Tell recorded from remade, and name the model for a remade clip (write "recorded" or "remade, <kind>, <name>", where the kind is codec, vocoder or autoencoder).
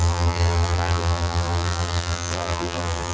remade, vocoder, BigVGAN v2